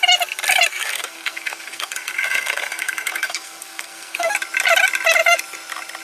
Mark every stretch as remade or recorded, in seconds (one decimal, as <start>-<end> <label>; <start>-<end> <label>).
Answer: 0.0-0.7 recorded; 0.7-4.3 remade; 4.3-6.0 recorded